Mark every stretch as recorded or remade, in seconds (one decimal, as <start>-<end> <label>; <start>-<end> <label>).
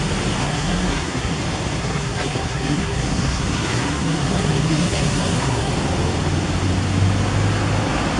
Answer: 0.0-0.4 recorded; 0.4-1.4 remade; 1.4-1.8 recorded; 1.8-5.7 remade; 5.7-8.2 recorded